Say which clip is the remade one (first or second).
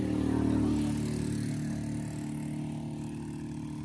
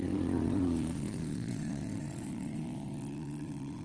second